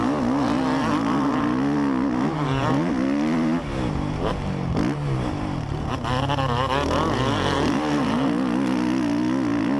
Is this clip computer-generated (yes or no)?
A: no